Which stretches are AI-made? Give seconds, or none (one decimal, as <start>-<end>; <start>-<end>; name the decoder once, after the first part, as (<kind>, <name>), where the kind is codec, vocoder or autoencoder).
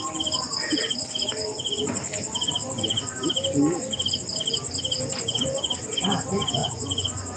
6.6-7.4 (vocoder, Vocos)